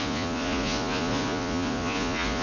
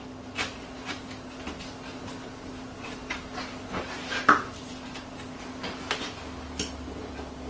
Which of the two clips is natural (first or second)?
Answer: second